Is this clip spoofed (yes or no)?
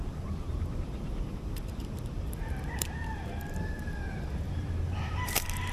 yes